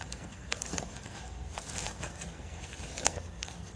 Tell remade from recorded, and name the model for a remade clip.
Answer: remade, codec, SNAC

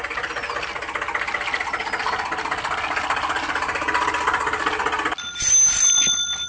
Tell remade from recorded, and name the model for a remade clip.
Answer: recorded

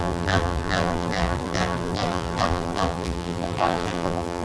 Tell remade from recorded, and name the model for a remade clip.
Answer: remade, vocoder, BigVGAN v2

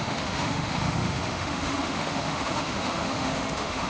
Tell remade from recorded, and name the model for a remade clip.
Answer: remade, autoencoder, DAC-VAE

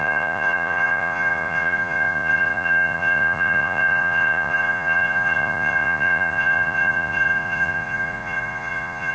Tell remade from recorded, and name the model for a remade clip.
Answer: remade, vocoder, Vocos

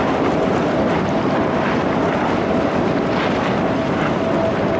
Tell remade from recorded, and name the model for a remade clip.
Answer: recorded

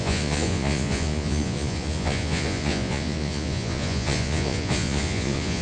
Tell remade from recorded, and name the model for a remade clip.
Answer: remade, vocoder, Vocos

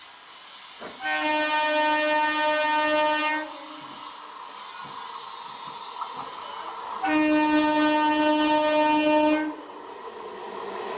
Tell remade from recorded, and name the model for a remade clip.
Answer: recorded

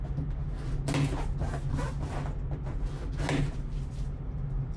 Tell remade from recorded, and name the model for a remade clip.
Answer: recorded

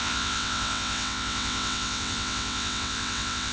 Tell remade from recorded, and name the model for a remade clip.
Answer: remade, vocoder, WaveNeXt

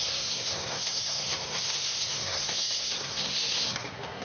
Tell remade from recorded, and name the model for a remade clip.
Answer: remade, codec, SNAC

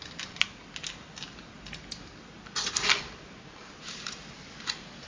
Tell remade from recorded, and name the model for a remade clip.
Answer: recorded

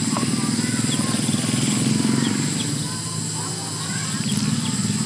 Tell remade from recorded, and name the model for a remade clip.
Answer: recorded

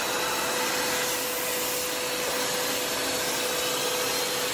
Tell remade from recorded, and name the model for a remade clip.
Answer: recorded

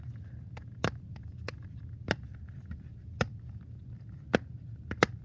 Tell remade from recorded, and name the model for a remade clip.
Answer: recorded